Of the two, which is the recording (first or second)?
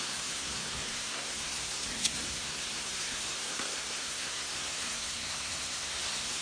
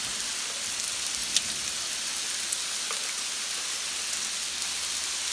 second